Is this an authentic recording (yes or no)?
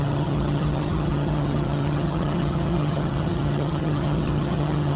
no